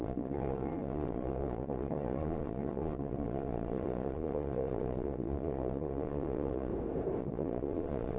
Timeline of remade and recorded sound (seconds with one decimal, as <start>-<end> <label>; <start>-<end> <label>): 0.0-6.7 remade; 6.7-7.2 recorded; 7.2-8.2 remade